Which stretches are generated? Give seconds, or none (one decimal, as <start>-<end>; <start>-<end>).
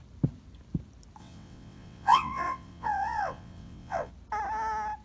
1.2-4.1